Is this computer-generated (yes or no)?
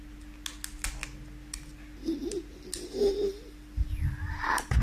no